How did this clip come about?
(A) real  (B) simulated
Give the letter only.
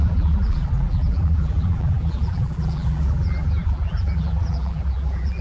B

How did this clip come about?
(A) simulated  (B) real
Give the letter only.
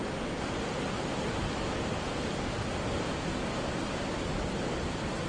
B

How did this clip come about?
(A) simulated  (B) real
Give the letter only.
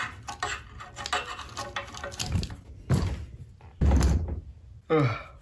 B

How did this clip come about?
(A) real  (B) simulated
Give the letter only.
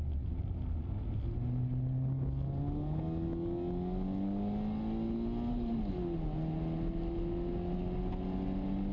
A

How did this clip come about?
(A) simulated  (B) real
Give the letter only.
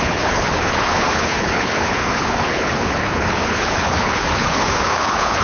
A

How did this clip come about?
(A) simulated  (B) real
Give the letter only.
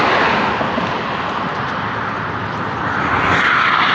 B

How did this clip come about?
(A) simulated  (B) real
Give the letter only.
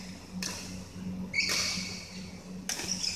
B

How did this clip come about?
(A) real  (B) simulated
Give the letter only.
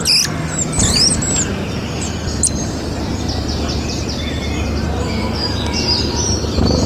A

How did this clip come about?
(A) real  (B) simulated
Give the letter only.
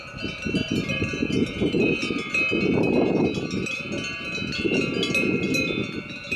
A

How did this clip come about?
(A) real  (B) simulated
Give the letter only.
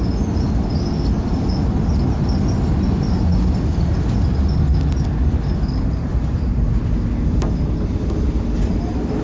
A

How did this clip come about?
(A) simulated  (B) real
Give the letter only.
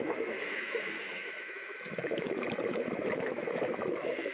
A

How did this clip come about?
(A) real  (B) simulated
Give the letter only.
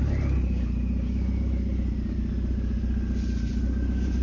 A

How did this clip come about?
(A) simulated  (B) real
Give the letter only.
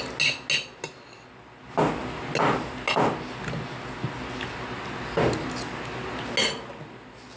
B